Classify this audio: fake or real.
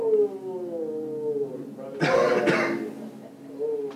real